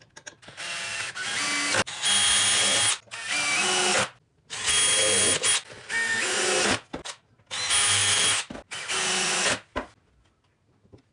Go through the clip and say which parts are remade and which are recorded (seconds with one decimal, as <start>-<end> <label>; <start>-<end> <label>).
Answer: 0.0-11.1 recorded